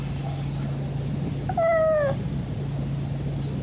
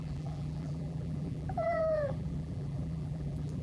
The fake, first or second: second